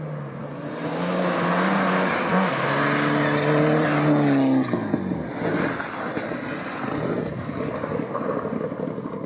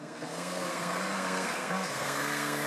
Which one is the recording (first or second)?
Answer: first